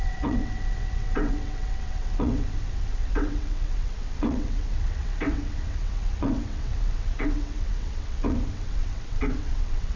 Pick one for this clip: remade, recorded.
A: remade